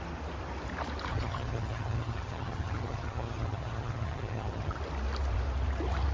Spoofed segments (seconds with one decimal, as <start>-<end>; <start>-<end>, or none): 1.1-4.8